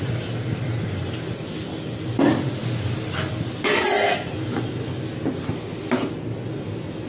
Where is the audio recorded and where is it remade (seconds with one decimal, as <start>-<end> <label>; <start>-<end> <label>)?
0.0-7.1 recorded